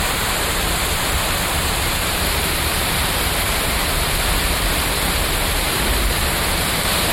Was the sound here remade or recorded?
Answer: remade